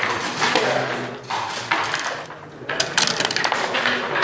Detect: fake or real real